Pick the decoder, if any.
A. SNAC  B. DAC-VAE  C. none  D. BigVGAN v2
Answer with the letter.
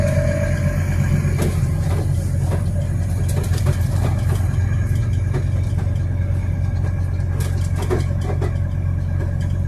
C